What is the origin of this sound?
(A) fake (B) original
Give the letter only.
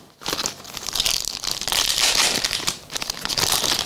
B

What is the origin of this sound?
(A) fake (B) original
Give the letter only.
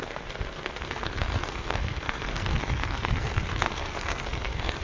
A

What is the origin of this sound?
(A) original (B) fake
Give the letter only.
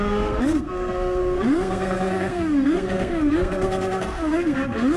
B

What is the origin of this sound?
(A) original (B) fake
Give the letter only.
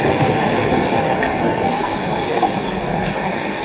B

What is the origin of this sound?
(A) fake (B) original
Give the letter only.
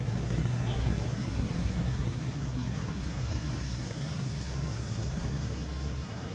A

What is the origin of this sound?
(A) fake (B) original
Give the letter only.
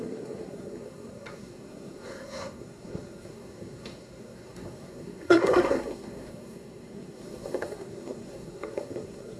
A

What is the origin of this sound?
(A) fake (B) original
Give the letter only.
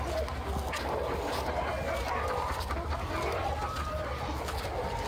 B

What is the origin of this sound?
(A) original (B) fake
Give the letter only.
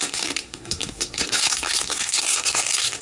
B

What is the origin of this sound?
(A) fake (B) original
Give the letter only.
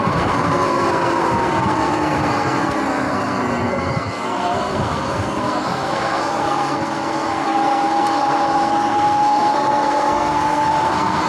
A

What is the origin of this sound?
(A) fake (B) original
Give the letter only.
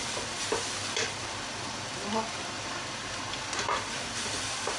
B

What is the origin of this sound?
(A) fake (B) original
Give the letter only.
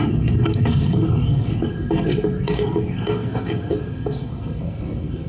A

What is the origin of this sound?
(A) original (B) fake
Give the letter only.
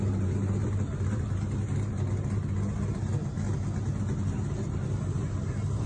A